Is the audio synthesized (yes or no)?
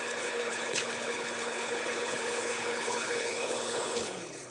yes